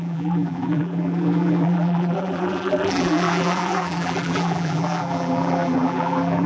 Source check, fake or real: fake